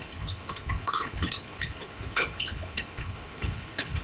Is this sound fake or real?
fake